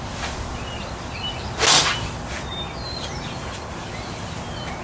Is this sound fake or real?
real